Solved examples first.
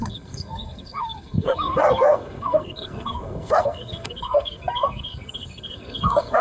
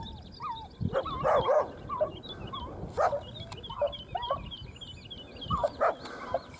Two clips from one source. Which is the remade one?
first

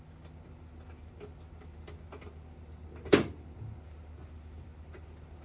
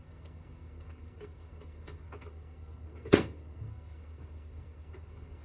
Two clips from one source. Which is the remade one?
second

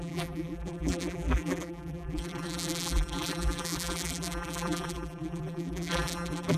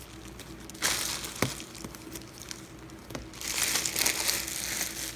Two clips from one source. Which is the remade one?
first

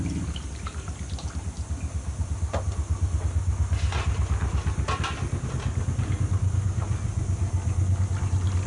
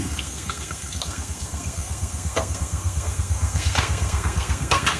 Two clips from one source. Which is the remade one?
second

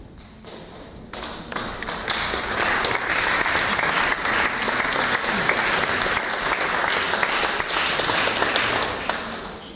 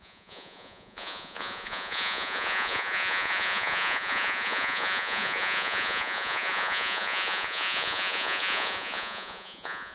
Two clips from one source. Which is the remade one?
second